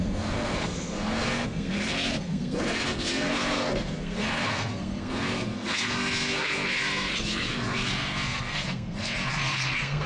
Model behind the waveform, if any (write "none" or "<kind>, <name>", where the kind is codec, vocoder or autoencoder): codec, SNAC